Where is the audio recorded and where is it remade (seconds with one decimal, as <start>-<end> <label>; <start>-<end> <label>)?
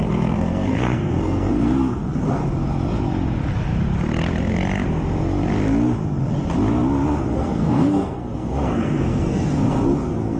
0.0-2.4 remade; 2.4-7.2 recorded; 7.2-10.4 remade